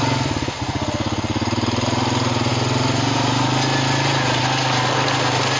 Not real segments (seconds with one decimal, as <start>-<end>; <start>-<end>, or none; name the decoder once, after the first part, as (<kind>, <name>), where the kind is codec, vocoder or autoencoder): none

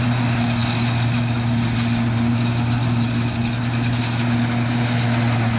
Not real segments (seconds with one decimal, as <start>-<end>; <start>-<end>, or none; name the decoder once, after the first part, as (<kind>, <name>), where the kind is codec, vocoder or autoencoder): none

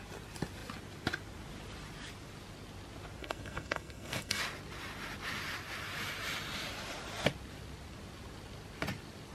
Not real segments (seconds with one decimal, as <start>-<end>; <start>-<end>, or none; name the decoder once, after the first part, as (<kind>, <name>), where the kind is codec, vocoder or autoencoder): 3.2-4.4 (codec, SNAC)

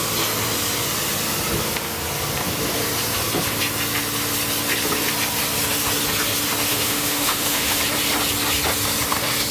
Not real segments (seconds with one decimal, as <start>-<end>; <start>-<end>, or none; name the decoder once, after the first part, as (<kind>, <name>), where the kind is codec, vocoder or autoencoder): 6.7-7.8 (autoencoder, DAC-VAE)

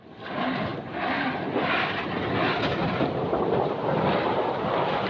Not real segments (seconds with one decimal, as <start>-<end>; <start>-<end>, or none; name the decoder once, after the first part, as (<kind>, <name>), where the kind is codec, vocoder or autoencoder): none